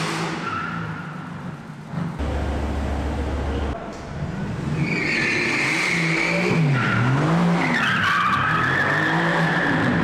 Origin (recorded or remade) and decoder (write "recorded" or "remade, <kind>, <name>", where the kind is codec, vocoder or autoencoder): recorded